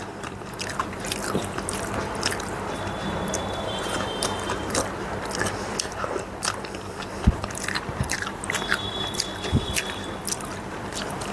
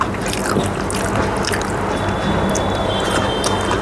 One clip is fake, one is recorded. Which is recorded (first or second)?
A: second